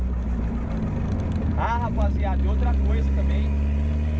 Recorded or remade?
recorded